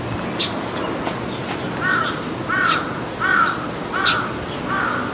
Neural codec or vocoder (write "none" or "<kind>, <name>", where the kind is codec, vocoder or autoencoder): none